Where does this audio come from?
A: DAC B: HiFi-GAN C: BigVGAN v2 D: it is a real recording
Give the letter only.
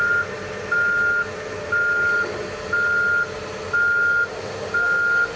D